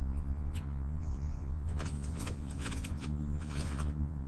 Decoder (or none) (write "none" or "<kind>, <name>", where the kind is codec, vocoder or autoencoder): vocoder, Vocos